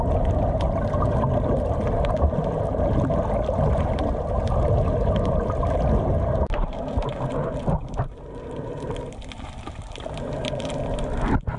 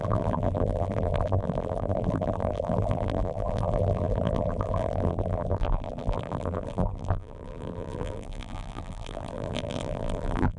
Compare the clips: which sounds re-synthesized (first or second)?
second